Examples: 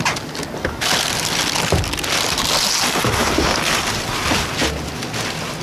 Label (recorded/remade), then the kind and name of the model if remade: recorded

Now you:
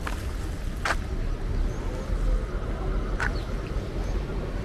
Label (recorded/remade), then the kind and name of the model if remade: recorded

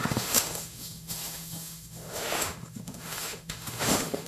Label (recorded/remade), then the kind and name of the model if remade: remade, autoencoder, DAC-VAE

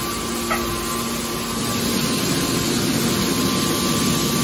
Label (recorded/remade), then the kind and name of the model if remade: recorded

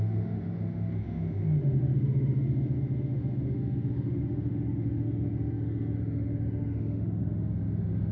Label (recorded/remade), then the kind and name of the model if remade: remade, autoencoder, DAC-VAE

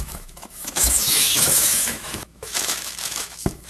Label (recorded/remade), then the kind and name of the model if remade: remade, autoencoder, DAC-VAE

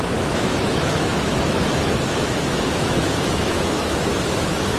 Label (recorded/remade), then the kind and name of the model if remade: remade, autoencoder, DAC-VAE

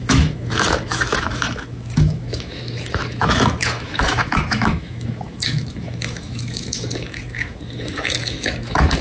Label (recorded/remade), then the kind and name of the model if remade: remade, autoencoder, DAC-VAE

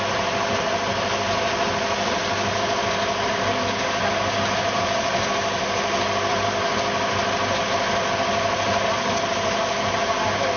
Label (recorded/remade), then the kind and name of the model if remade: recorded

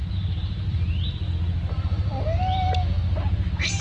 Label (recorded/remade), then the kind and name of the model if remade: recorded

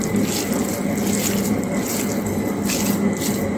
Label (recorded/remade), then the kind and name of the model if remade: recorded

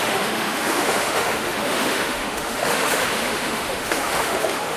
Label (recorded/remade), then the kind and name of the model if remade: remade, autoencoder, DAC-VAE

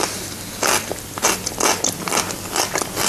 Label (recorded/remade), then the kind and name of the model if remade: recorded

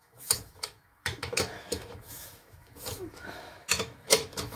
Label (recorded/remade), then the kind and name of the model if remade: remade, autoencoder, DAC-VAE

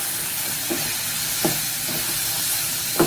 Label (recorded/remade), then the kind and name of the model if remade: recorded